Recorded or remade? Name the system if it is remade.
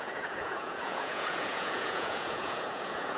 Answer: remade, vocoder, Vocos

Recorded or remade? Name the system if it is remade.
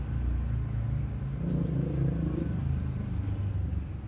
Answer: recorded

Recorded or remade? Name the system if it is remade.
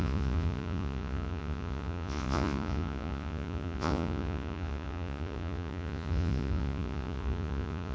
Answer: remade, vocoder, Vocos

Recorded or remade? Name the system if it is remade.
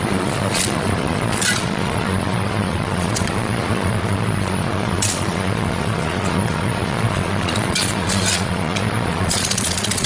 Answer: remade, vocoder, Vocos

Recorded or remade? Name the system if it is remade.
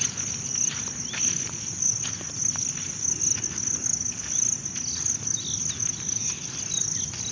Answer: recorded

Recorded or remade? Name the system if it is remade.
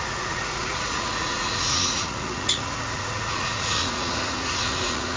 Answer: remade, vocoder, Vocos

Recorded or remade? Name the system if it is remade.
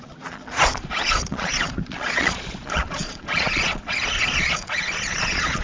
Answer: remade, vocoder, Vocos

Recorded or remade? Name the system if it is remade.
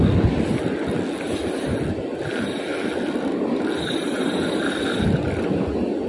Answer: recorded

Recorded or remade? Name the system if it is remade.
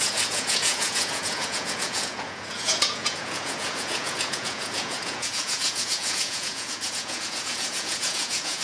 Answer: remade, vocoder, Vocos